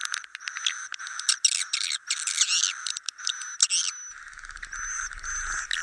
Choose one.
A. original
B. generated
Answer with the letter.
A